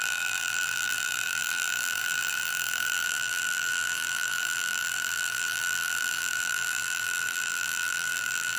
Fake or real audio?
fake